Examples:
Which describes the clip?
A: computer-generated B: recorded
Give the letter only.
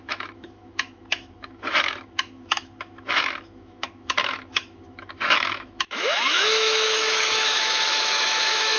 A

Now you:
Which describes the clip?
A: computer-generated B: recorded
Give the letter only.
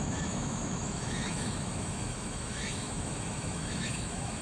A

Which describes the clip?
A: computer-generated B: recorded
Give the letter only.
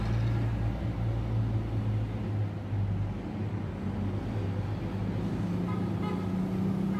B